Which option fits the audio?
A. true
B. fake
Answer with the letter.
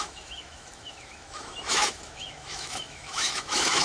B